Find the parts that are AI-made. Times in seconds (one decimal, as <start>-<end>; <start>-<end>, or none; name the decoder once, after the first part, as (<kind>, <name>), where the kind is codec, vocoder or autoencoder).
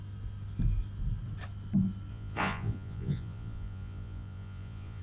2.1-5.0 (vocoder, Vocos)